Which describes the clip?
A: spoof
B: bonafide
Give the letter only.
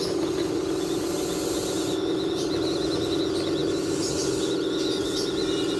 B